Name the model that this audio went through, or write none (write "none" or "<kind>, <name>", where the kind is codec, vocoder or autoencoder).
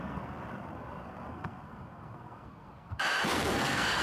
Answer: codec, SNAC